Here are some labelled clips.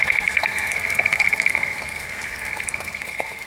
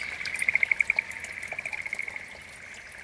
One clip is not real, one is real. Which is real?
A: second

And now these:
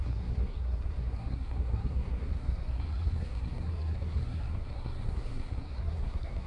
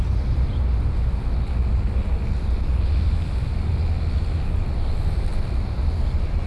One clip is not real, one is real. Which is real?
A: second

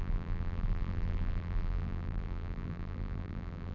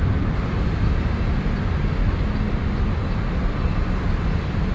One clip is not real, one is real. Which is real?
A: second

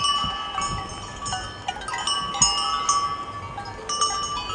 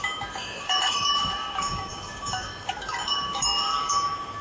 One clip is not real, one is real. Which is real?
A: first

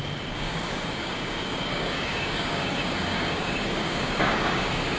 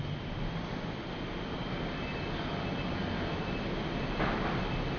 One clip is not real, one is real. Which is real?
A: second